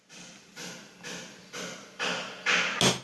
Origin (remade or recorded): recorded